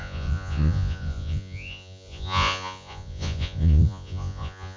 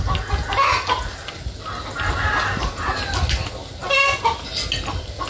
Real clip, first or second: second